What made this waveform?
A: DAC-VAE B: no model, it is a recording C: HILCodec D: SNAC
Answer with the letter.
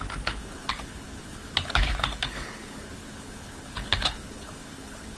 C